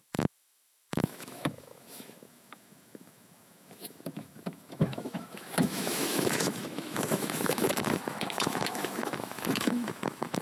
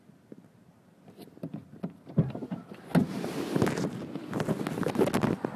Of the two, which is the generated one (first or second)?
first